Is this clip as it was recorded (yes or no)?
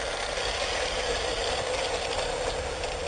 yes